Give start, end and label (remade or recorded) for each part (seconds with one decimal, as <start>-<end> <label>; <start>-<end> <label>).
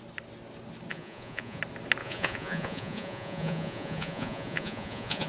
0.0-0.9 recorded; 0.9-1.6 remade; 1.6-2.0 recorded; 2.0-5.3 remade